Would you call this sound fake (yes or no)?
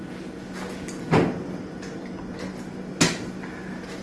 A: no